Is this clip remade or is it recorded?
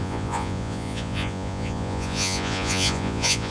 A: remade